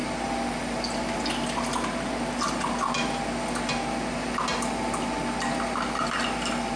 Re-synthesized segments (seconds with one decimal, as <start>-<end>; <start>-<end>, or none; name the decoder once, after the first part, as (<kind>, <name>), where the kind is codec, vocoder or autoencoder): none